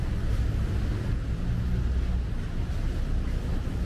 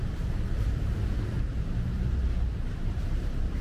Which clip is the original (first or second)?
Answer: first